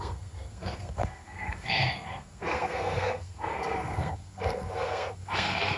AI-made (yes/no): yes